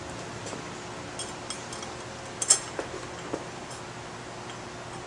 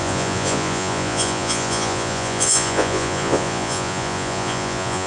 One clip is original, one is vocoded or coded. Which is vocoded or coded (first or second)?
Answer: second